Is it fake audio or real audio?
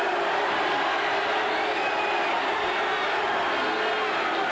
real